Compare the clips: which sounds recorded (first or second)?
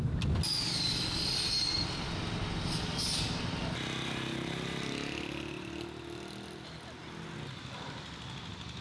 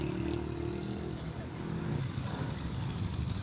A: first